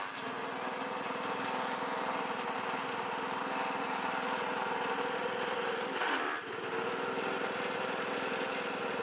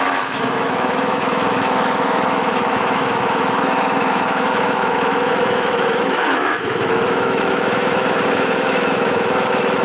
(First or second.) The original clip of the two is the first